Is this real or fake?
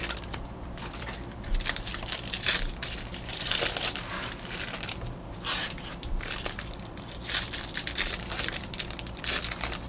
fake